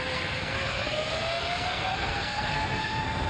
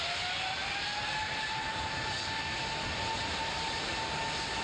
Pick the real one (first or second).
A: second